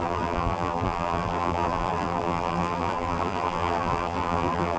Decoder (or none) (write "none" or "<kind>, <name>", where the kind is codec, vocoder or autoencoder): vocoder, BigVGAN v2